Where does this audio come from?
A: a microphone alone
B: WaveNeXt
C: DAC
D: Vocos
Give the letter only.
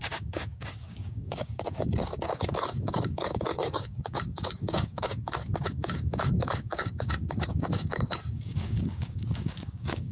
C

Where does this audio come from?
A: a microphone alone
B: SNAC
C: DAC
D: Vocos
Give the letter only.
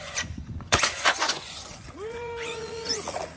D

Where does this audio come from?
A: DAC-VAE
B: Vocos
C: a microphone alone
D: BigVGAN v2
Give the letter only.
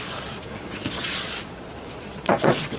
B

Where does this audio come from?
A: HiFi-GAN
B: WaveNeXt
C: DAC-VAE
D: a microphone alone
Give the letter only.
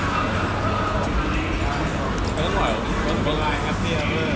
D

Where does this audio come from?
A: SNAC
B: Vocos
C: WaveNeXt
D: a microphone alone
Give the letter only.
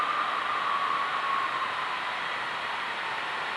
D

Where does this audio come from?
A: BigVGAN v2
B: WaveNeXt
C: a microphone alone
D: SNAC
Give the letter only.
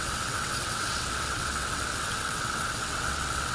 B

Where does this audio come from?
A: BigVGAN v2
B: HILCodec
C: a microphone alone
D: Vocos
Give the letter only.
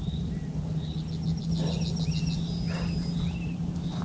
C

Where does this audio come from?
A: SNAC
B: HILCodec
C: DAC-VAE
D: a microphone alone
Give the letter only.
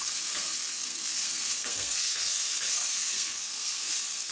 A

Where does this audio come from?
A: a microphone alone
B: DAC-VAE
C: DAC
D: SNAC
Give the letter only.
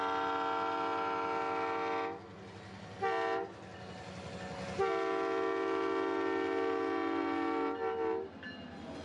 A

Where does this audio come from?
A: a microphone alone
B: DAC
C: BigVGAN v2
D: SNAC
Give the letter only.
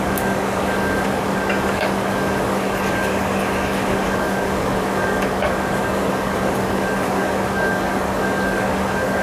B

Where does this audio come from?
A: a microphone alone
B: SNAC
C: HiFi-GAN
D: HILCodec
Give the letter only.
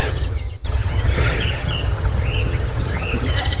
C